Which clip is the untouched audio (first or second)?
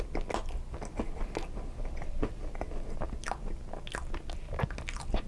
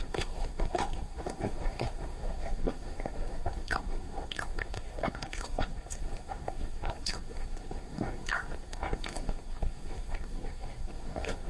first